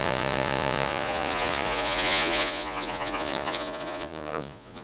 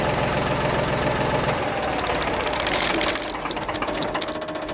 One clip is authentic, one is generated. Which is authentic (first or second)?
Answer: second